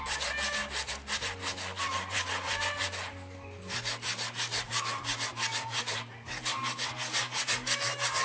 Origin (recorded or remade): recorded